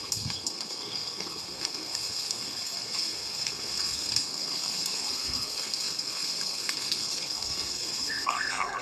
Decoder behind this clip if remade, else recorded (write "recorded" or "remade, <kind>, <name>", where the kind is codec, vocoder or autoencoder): remade, codec, SNAC